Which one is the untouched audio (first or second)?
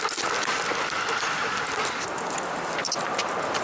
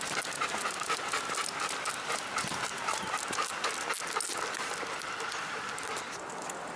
second